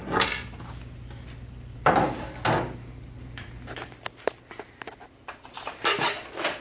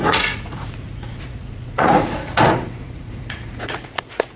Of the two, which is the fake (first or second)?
second